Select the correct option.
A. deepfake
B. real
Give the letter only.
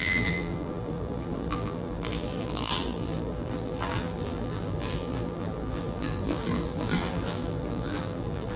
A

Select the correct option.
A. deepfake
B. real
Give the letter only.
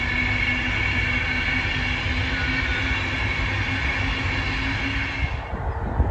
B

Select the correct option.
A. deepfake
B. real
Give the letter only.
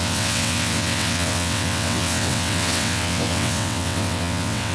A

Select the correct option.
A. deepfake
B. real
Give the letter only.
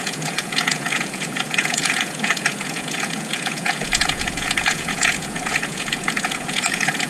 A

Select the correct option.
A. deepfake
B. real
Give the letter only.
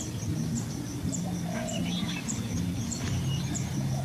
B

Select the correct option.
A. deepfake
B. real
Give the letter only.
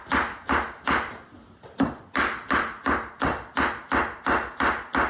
B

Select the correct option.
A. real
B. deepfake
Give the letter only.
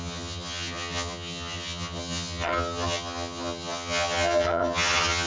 B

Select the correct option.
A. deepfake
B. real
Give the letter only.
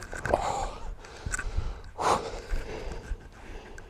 B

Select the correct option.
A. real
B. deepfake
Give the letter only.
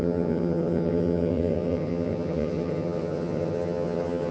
B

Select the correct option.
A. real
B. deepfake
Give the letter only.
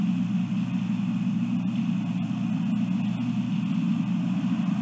A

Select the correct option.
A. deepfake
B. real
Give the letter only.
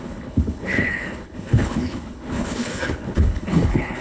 A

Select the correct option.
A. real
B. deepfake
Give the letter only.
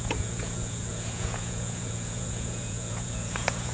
B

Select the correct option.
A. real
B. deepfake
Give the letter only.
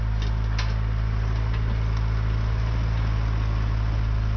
A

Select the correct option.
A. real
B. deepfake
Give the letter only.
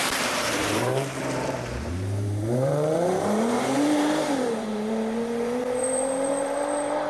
B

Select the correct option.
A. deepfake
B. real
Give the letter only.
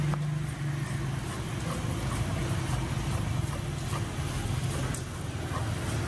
B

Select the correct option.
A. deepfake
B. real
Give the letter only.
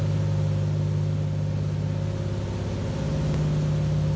B